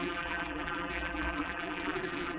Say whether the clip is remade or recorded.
remade